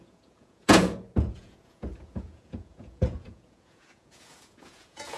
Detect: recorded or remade remade